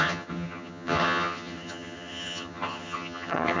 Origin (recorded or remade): remade